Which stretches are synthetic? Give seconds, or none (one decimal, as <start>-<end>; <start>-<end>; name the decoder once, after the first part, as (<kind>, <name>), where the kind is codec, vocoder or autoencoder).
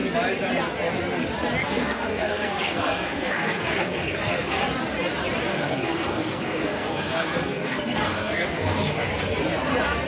1.6-4.6 (codec, SNAC); 5.5-9.1